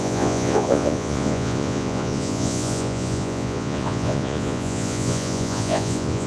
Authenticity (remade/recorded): remade